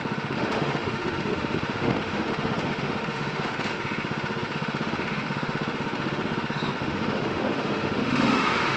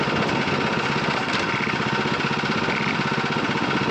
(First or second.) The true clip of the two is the second